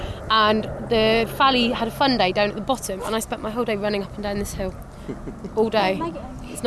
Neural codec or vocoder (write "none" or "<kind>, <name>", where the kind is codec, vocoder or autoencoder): none